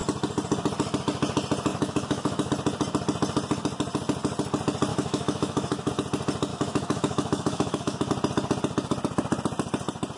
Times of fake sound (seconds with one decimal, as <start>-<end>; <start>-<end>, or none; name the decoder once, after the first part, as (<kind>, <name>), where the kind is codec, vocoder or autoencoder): 1.7-2.5 (autoencoder, DAC-VAE); 4.9-5.9; 6.5-8.1